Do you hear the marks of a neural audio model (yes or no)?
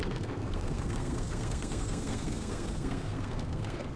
yes